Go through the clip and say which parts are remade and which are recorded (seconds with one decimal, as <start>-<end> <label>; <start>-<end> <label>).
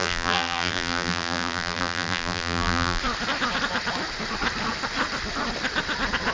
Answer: 0.0-3.0 remade; 3.0-6.3 recorded